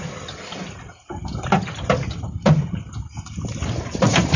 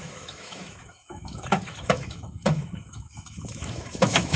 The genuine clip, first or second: first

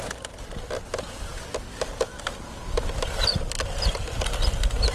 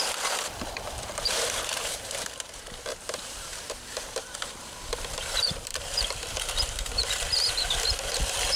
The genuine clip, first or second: first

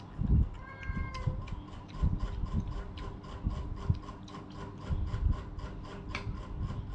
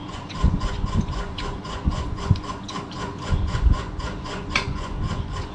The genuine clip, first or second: first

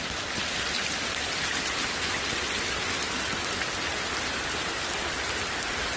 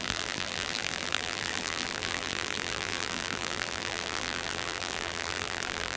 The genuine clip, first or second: first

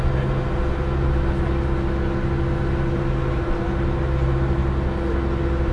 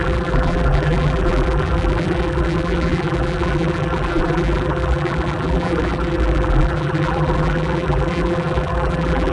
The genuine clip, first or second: first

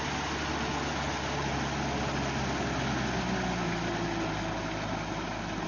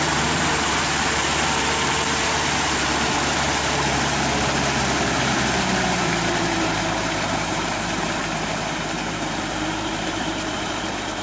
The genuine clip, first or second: first